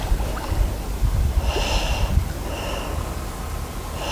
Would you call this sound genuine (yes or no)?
yes